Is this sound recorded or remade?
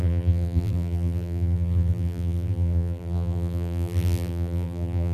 remade